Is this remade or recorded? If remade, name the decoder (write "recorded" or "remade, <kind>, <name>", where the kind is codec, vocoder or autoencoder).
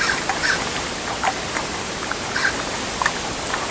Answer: recorded